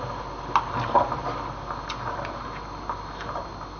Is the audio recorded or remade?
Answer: recorded